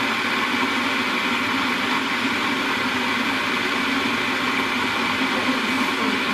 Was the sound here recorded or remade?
recorded